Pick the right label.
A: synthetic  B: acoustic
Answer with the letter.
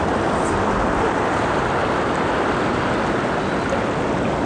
B